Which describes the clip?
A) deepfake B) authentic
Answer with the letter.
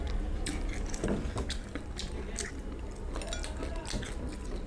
B